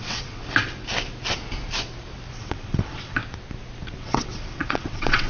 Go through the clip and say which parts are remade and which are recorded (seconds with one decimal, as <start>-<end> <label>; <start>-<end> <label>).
0.0-0.4 remade; 0.4-2.3 recorded; 2.3-3.2 remade; 3.2-4.0 recorded; 4.0-5.3 remade